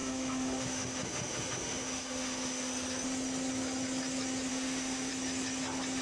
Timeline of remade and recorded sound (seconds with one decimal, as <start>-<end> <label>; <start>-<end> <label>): 0.0-2.7 remade; 2.7-4.5 recorded; 4.5-5.1 remade; 5.1-6.0 recorded